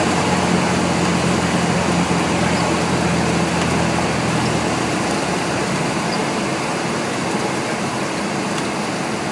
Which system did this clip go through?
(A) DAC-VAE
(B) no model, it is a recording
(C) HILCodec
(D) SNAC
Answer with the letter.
B